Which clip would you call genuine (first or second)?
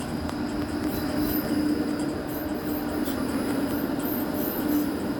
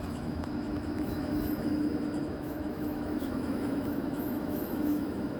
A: first